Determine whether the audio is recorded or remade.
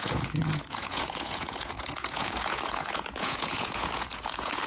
remade